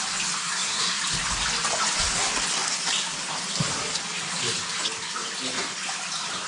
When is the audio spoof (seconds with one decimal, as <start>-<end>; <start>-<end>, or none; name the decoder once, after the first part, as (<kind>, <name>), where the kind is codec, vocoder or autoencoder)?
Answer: 0.4-1.0 (codec, SNAC)